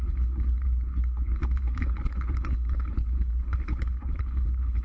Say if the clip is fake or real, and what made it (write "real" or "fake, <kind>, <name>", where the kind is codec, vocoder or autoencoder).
fake, codec, HILCodec